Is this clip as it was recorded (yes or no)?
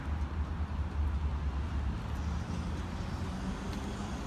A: yes